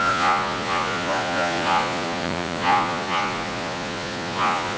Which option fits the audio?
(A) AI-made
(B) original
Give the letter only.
A